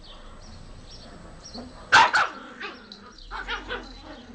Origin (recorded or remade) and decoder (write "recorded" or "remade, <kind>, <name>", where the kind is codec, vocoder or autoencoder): recorded